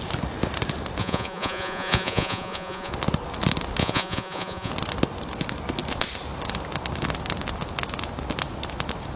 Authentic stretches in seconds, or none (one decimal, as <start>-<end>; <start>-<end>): 0.0-1.0; 2.9-3.8; 4.7-9.2